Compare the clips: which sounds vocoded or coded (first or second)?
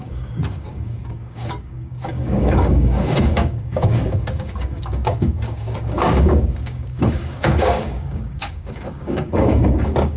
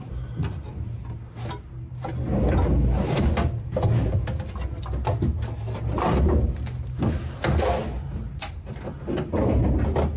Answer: first